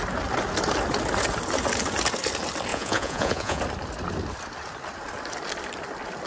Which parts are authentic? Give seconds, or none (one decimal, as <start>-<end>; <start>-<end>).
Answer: 0.0-2.7; 3.6-6.3